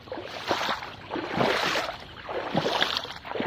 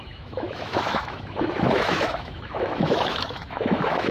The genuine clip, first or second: first